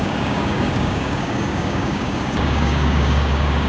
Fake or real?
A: fake